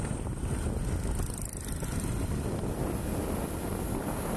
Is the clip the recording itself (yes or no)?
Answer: yes